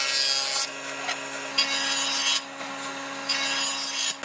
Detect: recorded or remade recorded